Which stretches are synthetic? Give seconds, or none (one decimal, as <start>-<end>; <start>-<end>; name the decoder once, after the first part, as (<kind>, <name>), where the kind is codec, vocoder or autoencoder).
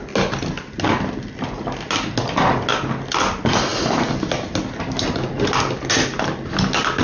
none